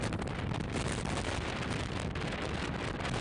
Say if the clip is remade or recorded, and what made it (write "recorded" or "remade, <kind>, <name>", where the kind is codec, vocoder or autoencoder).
recorded